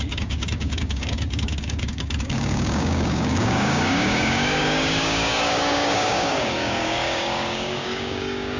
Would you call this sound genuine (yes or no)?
no